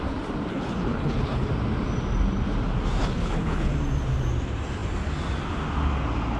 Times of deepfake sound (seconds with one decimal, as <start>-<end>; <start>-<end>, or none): 0.5-1.5; 3.0-3.7